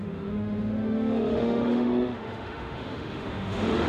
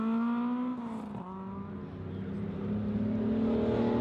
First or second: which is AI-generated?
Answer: first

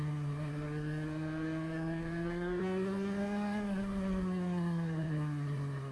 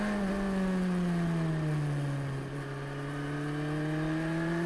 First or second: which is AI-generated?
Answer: first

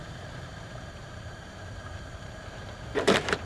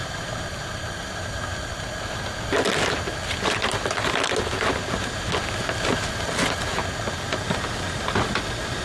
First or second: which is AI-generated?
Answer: first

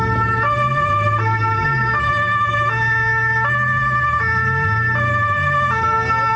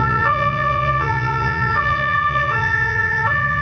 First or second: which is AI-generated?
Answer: second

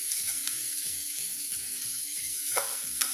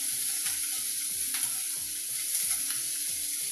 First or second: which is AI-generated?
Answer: first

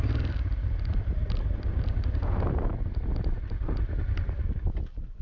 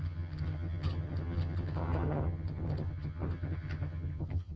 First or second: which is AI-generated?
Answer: second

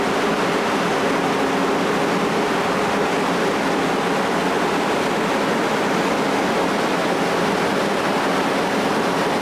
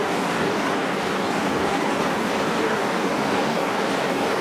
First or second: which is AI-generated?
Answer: second